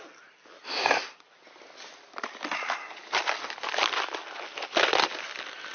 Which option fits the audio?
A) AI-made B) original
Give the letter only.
B